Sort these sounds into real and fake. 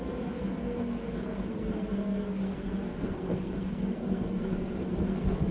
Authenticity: fake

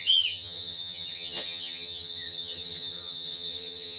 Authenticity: fake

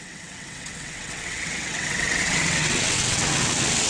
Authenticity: fake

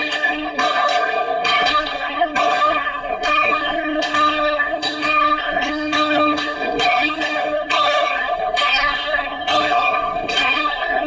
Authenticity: fake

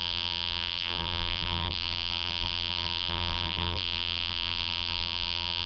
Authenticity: fake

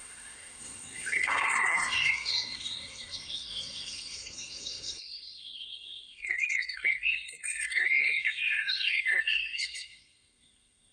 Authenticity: fake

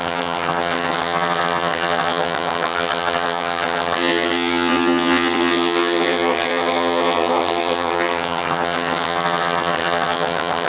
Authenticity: fake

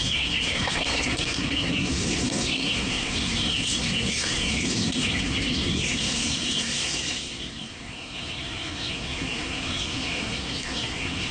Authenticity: fake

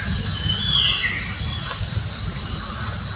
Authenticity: real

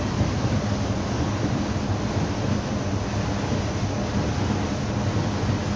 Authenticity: real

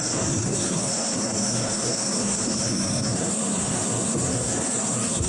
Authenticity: fake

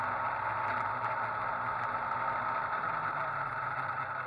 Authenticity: real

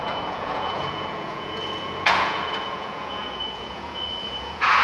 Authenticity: fake